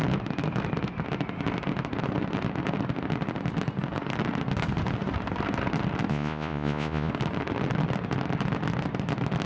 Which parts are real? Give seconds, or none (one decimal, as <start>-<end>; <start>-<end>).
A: 0.0-6.1; 7.1-9.5